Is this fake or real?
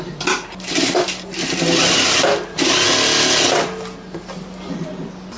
real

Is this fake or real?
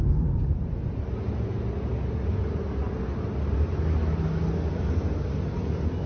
real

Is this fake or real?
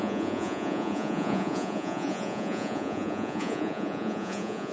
fake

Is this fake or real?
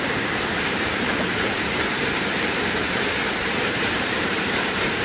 fake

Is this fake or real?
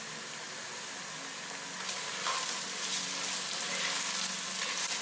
real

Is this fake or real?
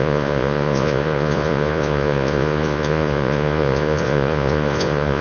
fake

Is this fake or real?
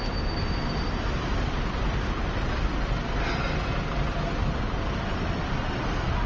real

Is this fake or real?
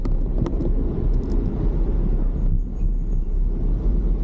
real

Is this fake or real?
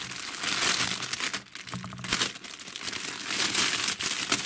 real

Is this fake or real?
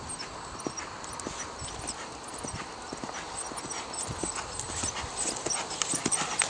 real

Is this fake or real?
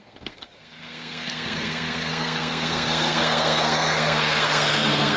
fake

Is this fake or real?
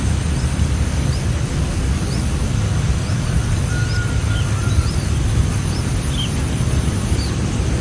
real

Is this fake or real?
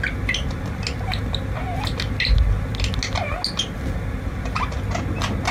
real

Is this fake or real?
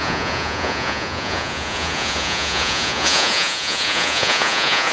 fake